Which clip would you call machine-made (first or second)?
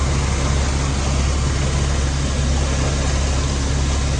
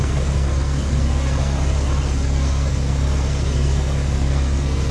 second